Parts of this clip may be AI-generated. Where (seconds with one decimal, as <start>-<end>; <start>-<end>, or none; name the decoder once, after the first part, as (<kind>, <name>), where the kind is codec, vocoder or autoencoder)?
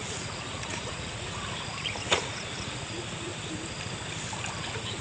0.0-3.3 (vocoder, Vocos); 4.6-5.0